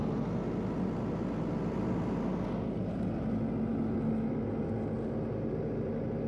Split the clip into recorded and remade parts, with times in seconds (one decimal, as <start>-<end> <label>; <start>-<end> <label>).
0.0-3.7 recorded; 3.7-4.5 remade; 4.5-6.3 recorded